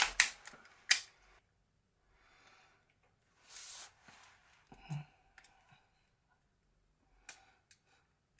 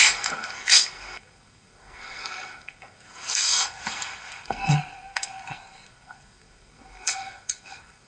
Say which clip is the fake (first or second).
second